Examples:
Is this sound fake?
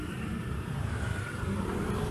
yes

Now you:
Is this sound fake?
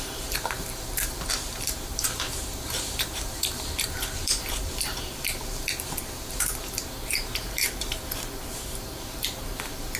yes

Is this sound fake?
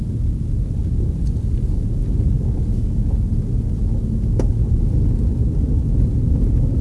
no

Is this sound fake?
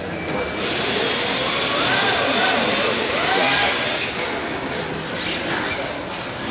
no